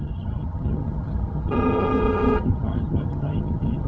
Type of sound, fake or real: fake